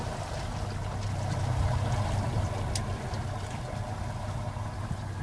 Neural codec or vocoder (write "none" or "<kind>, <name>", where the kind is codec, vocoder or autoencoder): none